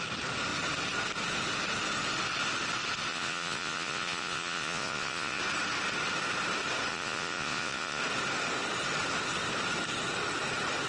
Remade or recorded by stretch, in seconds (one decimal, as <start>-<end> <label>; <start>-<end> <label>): 0.0-3.1 recorded; 3.1-5.4 remade; 5.4-6.9 recorded; 6.9-8.0 remade; 8.0-10.9 recorded